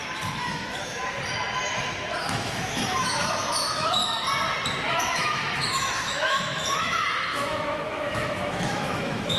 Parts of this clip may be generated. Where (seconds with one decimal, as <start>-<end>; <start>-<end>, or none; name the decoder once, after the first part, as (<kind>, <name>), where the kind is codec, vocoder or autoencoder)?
0.0-1.0 (autoencoder, DAC-VAE); 2.2-4.0; 4.9-9.4